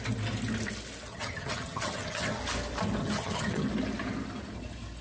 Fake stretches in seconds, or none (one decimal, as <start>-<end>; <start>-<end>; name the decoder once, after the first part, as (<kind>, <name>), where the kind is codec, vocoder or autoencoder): 1.1-2.4 (vocoder, HiFi-GAN); 3.0-3.7